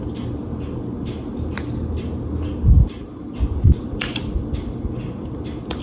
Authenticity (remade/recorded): recorded